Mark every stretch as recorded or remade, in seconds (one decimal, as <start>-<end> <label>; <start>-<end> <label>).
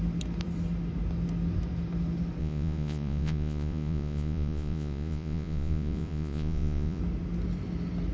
0.0-2.4 recorded; 2.4-7.0 remade; 7.0-8.1 recorded